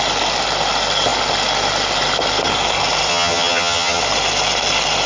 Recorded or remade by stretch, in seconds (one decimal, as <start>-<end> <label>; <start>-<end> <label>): 0.0-3.1 recorded; 3.1-4.0 remade; 4.0-5.1 recorded